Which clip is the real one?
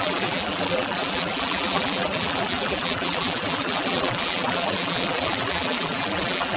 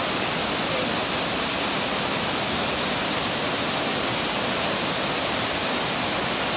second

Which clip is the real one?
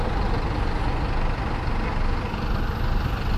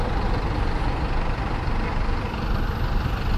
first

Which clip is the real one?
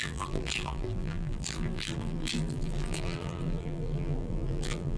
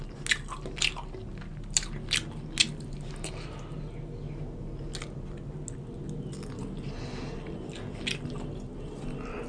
second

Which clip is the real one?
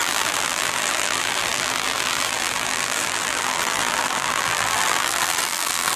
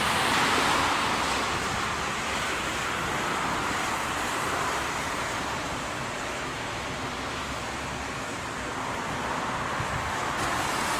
second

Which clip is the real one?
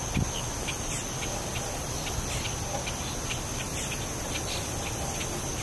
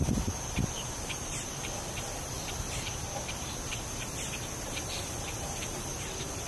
first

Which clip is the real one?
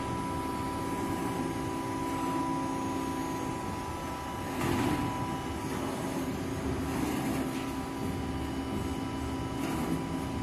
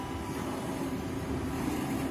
first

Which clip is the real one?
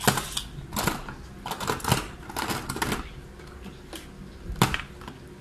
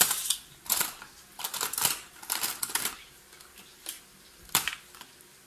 first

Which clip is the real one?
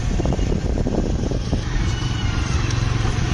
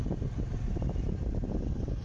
second